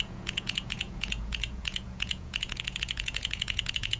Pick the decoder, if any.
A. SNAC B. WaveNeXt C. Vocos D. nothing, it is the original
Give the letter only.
C